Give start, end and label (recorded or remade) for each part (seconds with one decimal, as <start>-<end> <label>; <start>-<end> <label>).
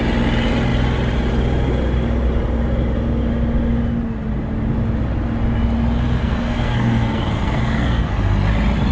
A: 0.0-6.2 recorded; 6.2-8.1 remade; 8.1-8.9 recorded